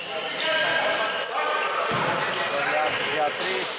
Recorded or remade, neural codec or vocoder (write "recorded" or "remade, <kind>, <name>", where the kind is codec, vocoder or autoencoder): recorded